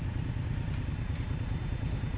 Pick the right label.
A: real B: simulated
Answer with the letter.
A